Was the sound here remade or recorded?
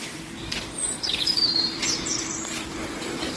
remade